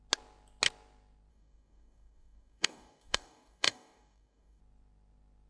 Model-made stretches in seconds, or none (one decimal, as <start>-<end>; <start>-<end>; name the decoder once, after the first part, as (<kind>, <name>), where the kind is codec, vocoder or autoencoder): 1.3-4.6 (codec, DAC)